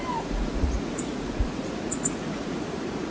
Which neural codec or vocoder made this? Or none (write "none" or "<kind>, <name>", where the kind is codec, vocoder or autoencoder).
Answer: vocoder, Vocos